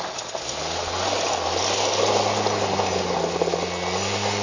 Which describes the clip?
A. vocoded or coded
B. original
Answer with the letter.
B